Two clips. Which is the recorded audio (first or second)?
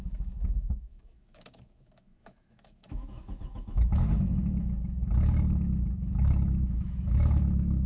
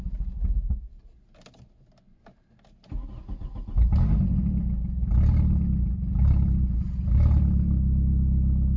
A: second